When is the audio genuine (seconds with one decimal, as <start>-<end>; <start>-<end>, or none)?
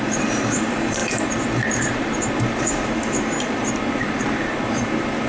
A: none